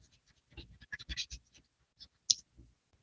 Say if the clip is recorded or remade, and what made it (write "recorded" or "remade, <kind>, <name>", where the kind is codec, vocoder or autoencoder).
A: recorded